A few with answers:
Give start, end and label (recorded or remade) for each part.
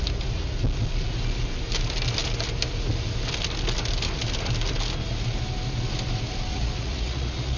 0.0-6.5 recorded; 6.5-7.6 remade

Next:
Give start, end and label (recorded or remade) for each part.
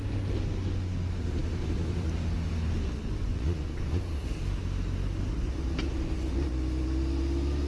0.0-3.2 recorded; 3.2-4.0 remade; 4.0-7.7 recorded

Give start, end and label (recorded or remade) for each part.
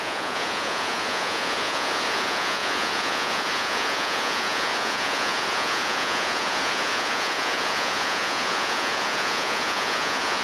0.0-10.4 remade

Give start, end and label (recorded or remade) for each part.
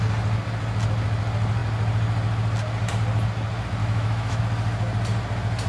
0.0-3.8 recorded; 3.8-4.4 remade; 4.4-5.7 recorded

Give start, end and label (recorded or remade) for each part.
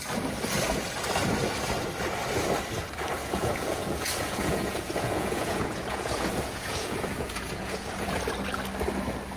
0.0-3.2 recorded; 3.2-8.2 remade; 8.2-9.4 recorded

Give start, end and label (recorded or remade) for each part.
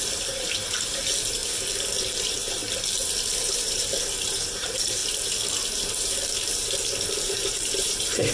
0.0-1.4 remade; 1.4-2.0 recorded; 2.0-2.6 remade; 2.6-3.4 recorded; 3.4-5.0 remade; 5.0-7.2 recorded; 7.2-8.3 remade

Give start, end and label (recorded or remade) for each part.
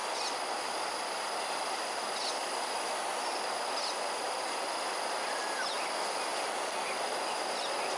0.0-8.0 recorded